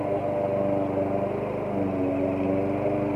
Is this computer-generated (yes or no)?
no